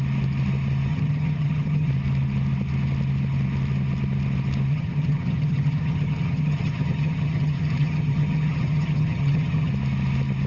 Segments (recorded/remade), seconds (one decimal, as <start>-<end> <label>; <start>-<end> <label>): 0.0-0.9 recorded; 0.9-1.9 remade; 1.9-4.7 recorded; 4.7-9.7 remade; 9.7-10.5 recorded